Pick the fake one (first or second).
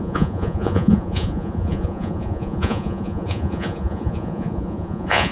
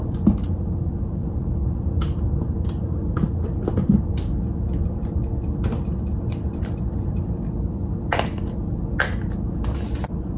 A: first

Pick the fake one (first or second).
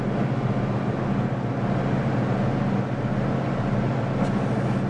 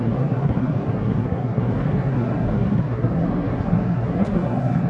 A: second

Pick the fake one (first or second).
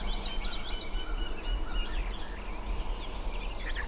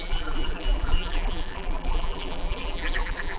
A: second